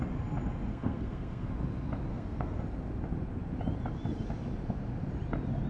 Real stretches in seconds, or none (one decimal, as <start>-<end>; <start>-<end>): 0.0-0.7; 1.5-2.1; 2.6-5.7